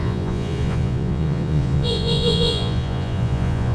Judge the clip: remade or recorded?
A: remade